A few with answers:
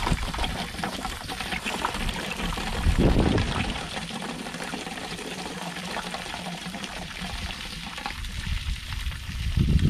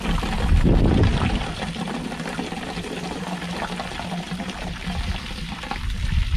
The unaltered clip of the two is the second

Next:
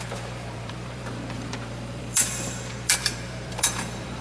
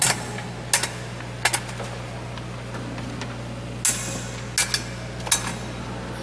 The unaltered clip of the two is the second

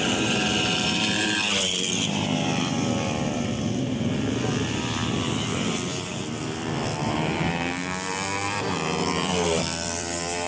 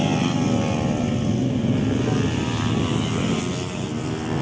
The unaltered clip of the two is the second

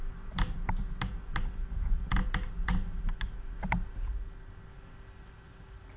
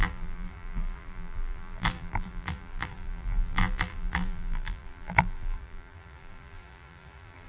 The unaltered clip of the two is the first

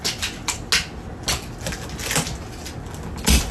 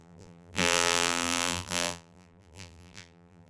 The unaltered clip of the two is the first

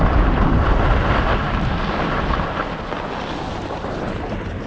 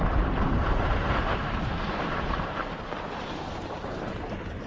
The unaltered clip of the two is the first